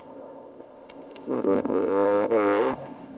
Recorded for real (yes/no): no